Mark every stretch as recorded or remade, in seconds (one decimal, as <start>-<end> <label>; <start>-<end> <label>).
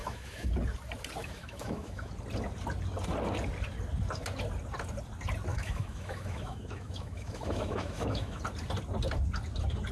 0.0-0.5 remade; 0.5-1.2 recorded; 1.2-2.1 remade; 2.1-5.5 recorded; 5.5-8.4 remade; 8.4-9.9 recorded